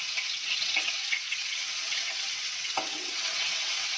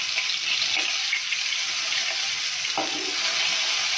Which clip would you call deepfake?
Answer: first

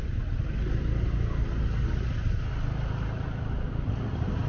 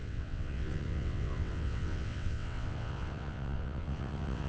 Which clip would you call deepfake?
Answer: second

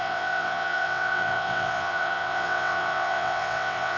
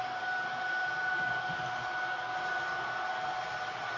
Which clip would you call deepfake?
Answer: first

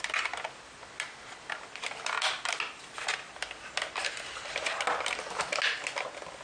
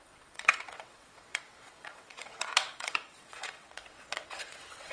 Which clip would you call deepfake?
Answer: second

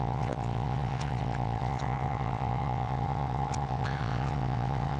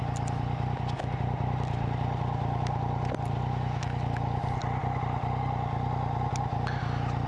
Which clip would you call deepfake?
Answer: first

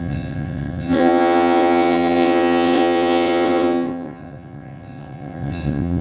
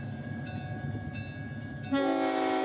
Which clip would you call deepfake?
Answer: first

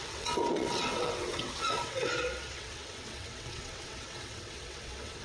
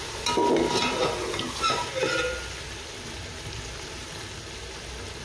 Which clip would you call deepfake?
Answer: first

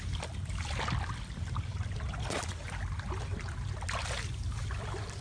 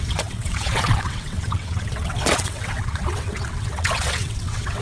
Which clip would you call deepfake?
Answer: second